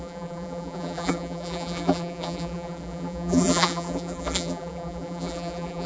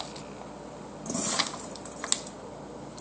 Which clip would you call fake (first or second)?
first